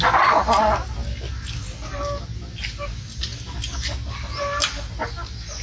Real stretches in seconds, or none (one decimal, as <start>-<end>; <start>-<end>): 0.0-5.6